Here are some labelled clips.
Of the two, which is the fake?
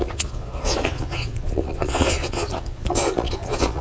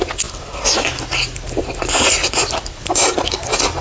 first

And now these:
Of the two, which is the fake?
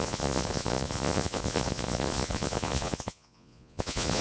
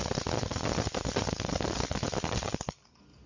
first